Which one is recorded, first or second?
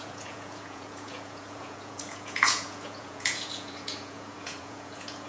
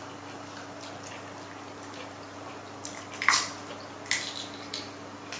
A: second